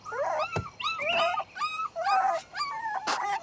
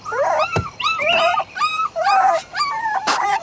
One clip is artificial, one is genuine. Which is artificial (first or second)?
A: second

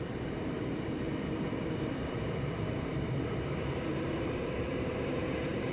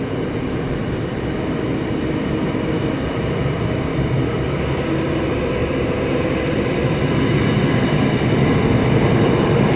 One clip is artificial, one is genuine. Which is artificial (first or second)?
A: first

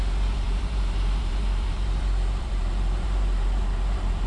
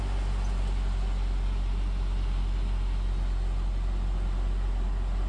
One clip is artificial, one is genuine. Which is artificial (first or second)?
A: first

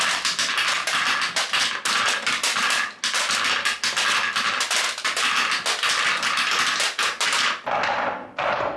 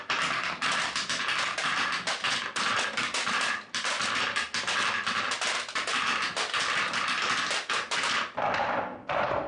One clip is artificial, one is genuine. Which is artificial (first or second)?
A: second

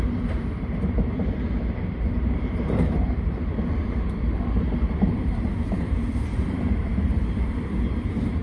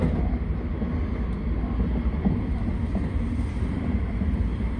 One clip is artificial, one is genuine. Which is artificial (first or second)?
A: first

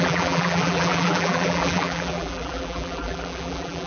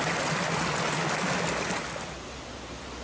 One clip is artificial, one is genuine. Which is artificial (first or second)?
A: first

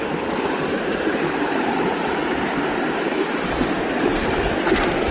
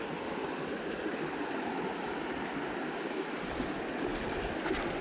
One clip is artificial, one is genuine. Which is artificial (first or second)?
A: first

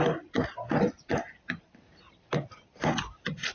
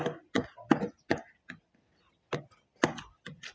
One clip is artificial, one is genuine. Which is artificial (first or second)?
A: first